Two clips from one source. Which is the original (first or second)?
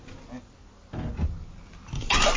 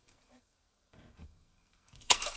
first